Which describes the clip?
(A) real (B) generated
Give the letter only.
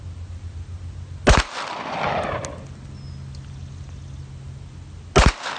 A